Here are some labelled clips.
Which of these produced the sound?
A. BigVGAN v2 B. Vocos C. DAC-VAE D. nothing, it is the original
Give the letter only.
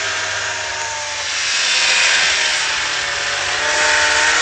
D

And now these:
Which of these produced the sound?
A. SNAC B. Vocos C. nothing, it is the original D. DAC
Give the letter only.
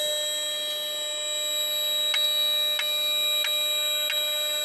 C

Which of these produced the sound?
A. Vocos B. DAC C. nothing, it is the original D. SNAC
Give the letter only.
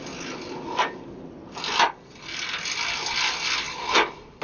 C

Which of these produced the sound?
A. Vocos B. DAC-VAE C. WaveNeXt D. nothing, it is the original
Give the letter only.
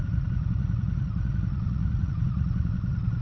A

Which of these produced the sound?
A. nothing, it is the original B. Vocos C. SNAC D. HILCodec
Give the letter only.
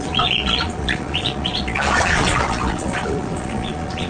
B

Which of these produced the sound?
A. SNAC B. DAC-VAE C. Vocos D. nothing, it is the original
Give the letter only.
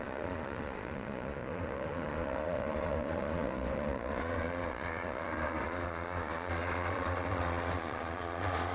C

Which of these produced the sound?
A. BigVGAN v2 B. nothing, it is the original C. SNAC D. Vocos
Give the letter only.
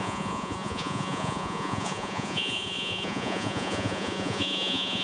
D